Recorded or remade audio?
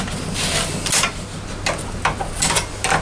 recorded